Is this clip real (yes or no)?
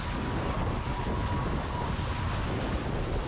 yes